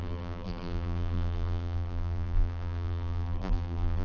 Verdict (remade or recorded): remade